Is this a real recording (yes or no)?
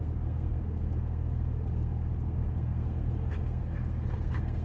no